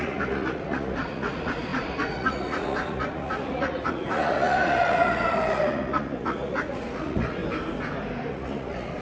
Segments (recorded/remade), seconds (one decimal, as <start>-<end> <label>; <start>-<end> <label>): 0.0-7.4 remade; 7.4-8.3 recorded; 8.3-9.0 remade